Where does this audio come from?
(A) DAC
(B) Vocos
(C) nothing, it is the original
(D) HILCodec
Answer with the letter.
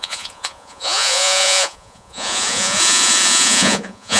B